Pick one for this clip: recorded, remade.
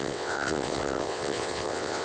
remade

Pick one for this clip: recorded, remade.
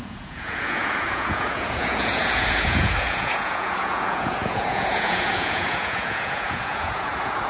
remade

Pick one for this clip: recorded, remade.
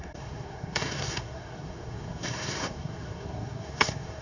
remade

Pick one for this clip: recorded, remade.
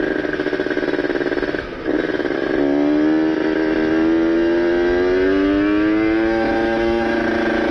recorded